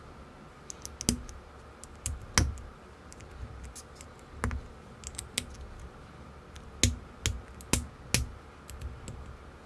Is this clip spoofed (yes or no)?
no